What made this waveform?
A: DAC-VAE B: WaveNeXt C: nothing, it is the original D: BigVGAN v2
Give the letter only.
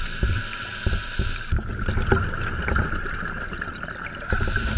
C